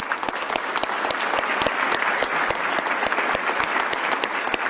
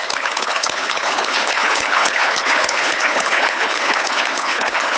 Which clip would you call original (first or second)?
first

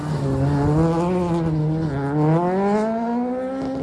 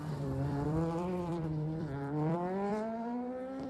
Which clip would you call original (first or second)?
first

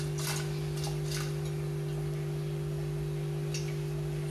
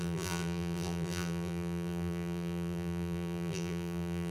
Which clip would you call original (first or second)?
first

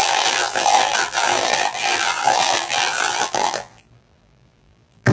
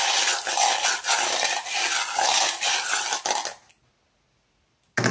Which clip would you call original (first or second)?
second